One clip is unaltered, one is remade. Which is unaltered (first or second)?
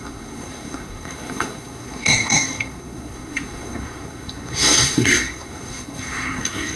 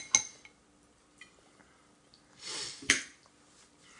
second